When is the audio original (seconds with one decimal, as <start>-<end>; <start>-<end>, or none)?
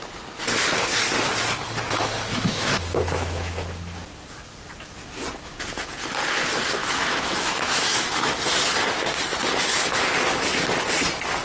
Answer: 0.0-2.3; 3.5-6.8; 8.3-11.4